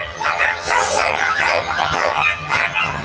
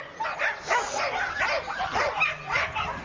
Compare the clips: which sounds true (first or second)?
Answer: second